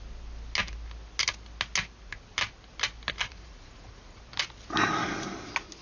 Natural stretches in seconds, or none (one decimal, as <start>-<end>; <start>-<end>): 0.0-3.2; 4.2-5.8